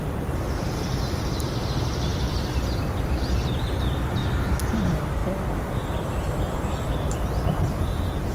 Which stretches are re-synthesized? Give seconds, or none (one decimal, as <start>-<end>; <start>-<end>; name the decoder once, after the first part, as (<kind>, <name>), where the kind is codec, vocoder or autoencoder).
0.0-4.2 (vocoder, BigVGAN v2); 4.7-5.2; 6.0-8.3

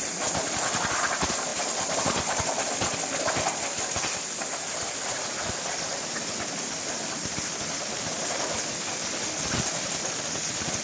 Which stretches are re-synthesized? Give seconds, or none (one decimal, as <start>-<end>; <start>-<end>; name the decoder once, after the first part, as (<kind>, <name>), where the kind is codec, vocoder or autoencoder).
none

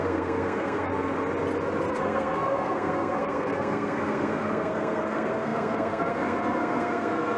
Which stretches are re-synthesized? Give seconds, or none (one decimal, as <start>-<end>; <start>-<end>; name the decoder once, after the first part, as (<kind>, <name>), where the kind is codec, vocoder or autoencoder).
0.0-0.9 (codec, SNAC); 1.9-7.4

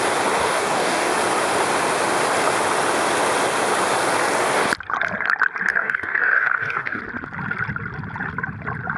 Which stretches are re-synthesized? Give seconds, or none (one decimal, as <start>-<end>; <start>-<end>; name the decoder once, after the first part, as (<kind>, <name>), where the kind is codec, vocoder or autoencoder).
0.4-1.1 (codec, DAC); 5.7-7.0

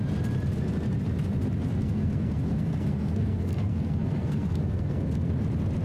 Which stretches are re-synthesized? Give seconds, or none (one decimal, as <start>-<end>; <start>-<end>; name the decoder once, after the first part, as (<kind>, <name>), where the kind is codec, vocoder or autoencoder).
1.8-5.3 (codec, SNAC)

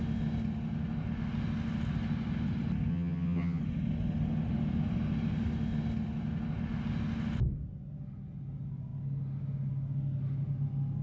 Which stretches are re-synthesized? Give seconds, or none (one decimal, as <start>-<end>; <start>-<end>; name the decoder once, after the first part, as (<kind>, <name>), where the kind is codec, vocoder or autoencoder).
2.9-3.6 (vocoder, HiFi-GAN)